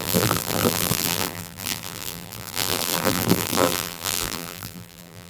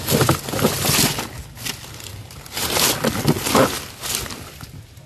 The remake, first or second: first